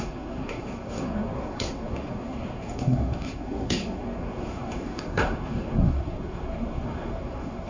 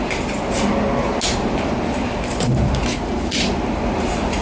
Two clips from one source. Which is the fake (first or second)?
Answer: first